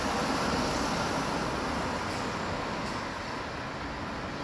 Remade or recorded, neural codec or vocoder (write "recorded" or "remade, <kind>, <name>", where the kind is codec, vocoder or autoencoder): recorded